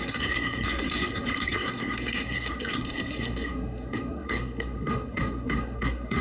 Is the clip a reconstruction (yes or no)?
yes